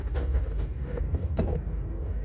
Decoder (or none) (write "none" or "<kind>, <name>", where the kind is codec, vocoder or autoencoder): codec, DAC